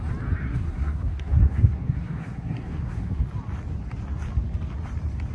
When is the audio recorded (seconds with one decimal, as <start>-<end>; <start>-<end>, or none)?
0.0-0.4; 3.2-5.3